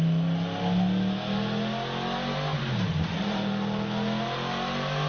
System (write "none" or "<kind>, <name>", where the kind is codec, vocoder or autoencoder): none